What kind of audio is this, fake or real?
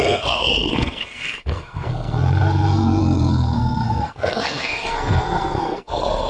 fake